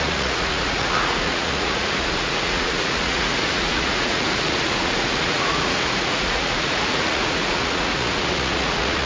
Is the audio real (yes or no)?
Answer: no